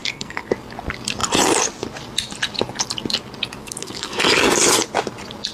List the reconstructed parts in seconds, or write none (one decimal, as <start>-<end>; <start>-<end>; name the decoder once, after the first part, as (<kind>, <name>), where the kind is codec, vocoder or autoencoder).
0.0-0.5 (codec, SNAC); 3.6-4.2